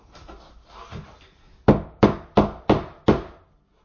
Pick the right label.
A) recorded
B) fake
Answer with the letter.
A